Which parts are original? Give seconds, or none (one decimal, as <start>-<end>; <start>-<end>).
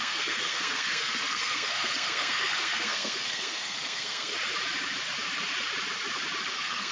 4.3-6.5